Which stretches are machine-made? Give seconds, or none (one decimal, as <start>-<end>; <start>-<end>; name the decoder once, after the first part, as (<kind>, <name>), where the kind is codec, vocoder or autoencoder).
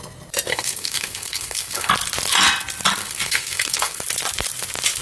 0.5-1.9 (codec, SNAC); 3.0-4.0